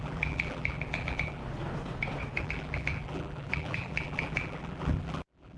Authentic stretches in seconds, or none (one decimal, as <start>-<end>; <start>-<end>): 1.4-2.4